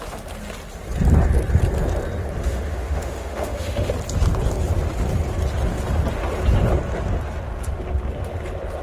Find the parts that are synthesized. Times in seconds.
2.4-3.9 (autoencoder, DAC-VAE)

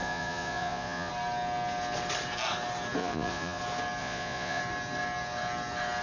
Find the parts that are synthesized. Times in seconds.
0.0-1.1 (vocoder, Vocos); 3.0-3.6; 4.0-4.6

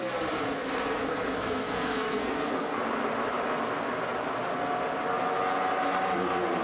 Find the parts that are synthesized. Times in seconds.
1.1-2.8 (codec, SNAC)

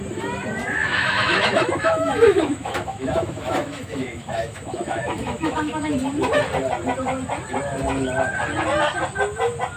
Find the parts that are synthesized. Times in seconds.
0.8-5.9 (autoencoder, DAC-VAE)

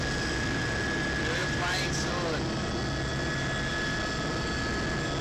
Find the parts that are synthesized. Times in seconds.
1.4-2.1 (vocoder, BigVGAN v2)

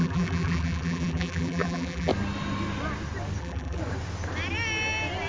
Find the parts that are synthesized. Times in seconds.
0.0-2.1 (vocoder, BigVGAN v2); 3.4-3.8

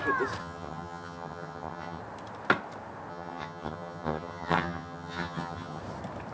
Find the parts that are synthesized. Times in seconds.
0.4-2.0 (vocoder, HiFi-GAN); 3.1-5.8